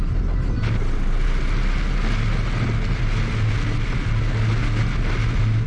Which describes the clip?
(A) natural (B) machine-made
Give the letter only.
A